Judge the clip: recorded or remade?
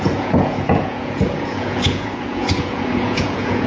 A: remade